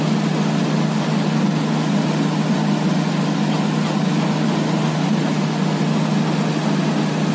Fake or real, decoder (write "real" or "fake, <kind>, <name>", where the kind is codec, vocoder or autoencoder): real